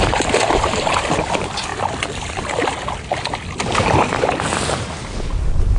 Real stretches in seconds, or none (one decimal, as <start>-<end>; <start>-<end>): 1.7-4.8